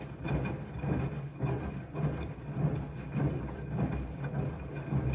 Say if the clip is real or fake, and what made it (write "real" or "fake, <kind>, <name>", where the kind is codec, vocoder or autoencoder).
real